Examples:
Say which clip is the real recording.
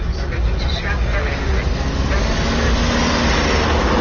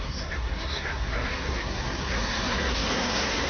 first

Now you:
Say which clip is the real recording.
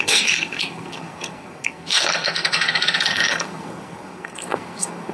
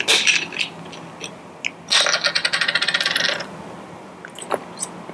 second